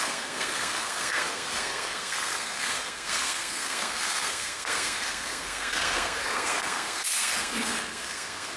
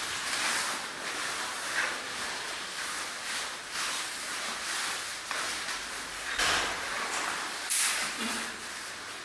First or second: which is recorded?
second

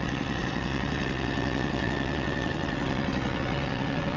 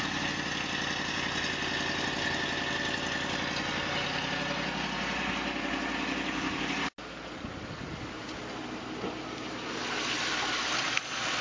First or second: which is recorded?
second